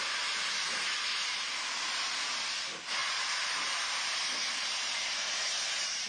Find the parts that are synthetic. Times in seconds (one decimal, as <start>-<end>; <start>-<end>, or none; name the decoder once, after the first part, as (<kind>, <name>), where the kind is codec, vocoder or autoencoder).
none